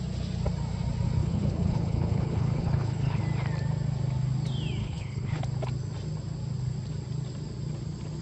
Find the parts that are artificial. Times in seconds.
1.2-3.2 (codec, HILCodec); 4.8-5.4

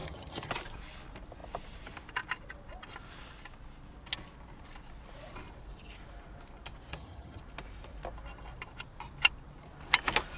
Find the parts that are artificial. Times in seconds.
0.0-0.5 (vocoder, HiFi-GAN); 6.9-7.4

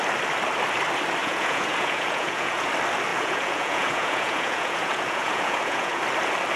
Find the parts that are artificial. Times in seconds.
1.2-2.7 (vocoder, Vocos); 3.1-6.0

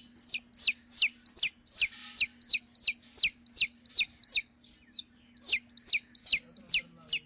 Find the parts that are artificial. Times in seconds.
none

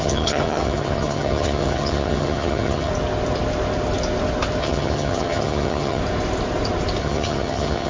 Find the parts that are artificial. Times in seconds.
0.0-2.9 (vocoder, HiFi-GAN); 4.6-6.0; 7.0-7.9

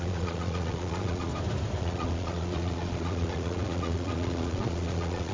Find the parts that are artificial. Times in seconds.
0.0-1.3 (vocoder, Vocos); 1.8-5.3

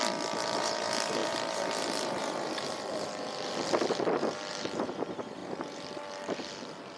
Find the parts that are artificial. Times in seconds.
0.0-7.0 (vocoder, BigVGAN v2)

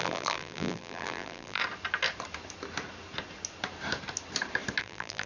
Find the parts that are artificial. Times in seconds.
0.0-1.6 (vocoder, BigVGAN v2); 4.8-5.3